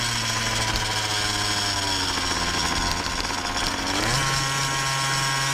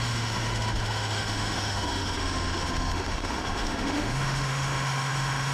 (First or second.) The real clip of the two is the first